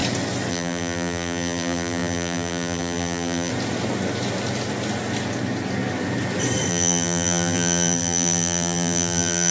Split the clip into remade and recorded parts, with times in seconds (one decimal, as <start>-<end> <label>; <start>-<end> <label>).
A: 0.0-0.5 recorded; 0.5-3.5 remade; 3.5-6.7 recorded; 6.7-9.5 remade